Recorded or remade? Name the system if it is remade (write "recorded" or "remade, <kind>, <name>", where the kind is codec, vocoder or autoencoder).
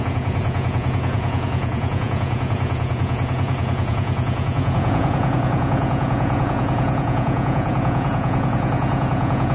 remade, vocoder, Vocos